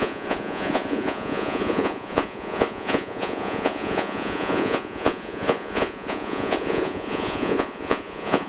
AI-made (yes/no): yes